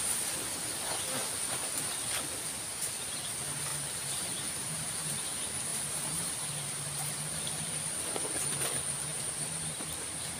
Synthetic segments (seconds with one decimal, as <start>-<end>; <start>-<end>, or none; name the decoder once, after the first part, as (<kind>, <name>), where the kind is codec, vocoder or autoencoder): 3.7-4.9 (vocoder, BigVGAN v2); 5.7-8.0; 9.1-10.4